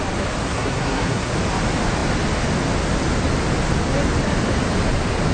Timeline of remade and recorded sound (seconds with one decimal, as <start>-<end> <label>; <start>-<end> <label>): 0.0-0.4 recorded; 0.4-1.3 remade; 1.3-5.3 recorded